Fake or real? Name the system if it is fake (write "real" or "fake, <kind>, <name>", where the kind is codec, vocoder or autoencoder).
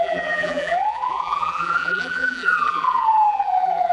fake, vocoder, BigVGAN v2